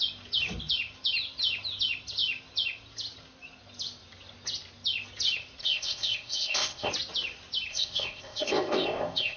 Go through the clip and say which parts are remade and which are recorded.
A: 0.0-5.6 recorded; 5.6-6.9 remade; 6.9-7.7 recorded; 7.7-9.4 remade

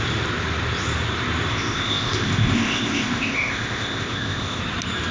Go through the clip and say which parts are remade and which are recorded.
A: 0.0-1.5 recorded; 1.5-4.6 remade; 4.6-5.1 recorded

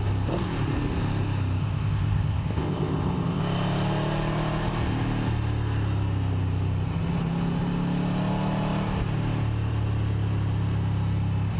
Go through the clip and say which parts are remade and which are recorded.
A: 0.0-1.6 recorded; 1.6-3.4 remade; 3.4-11.6 recorded